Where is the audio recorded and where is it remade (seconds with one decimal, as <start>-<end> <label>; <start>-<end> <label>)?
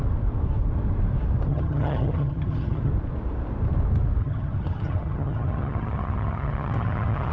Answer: 0.0-1.5 recorded; 1.5-2.9 remade; 2.9-4.2 recorded; 4.2-7.3 remade